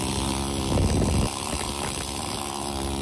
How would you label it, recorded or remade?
recorded